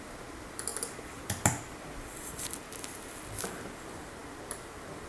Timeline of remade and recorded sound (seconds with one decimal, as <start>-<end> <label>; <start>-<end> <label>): 0.0-5.1 recorded